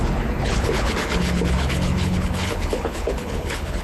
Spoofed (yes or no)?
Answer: yes